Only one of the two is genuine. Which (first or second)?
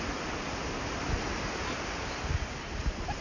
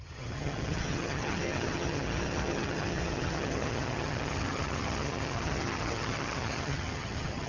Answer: first